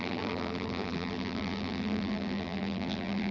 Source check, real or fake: fake